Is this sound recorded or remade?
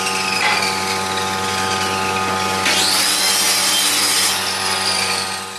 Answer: recorded